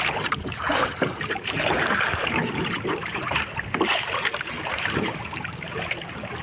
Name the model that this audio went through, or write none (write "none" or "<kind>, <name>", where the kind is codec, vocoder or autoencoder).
vocoder, BigVGAN v2